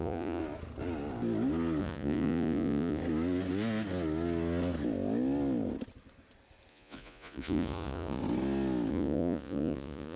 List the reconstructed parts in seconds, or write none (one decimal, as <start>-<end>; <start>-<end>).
0.0-0.4; 1.8-3.0; 6.7-8.2; 8.9-10.2